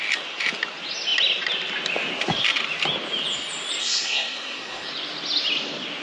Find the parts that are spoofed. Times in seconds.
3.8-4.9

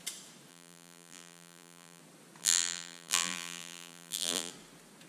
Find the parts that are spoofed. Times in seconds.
0.5-2.0; 2.4-4.5

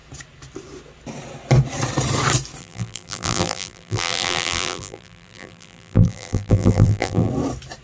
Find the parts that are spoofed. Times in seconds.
2.6-7.3

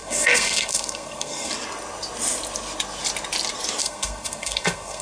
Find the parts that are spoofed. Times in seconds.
0.0-1.5; 3.8-5.0

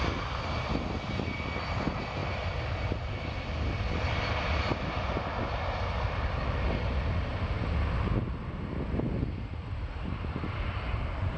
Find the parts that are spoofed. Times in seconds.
none